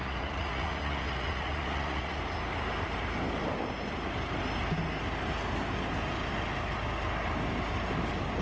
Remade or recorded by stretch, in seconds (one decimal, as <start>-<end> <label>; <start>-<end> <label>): 0.0-2.2 remade; 2.2-8.4 recorded